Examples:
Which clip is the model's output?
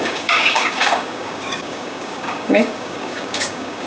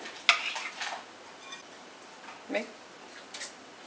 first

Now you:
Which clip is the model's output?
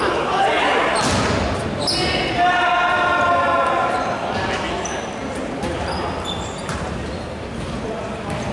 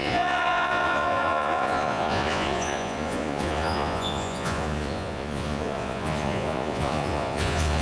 second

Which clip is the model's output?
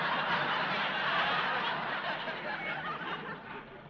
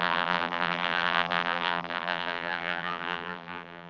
second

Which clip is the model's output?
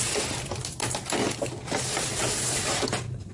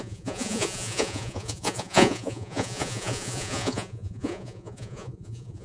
second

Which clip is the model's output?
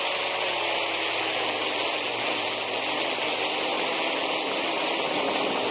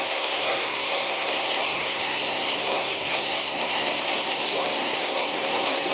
second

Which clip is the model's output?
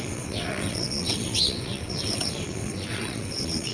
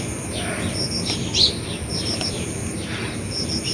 first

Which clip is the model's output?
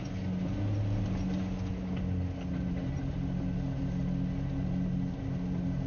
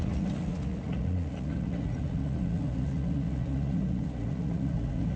second